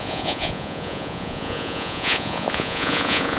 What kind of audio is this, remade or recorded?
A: remade